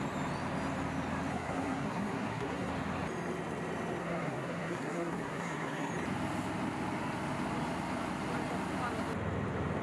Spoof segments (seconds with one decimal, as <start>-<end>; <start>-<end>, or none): 1.3-2.7; 4.0-5.9